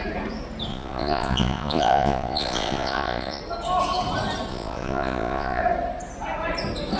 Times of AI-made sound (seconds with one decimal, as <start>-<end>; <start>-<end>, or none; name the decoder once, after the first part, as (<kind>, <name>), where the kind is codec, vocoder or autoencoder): 0.7-3.4 (vocoder, Vocos); 4.5-5.6